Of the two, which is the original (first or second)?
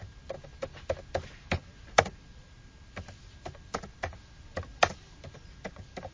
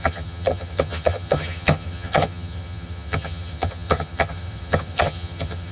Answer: first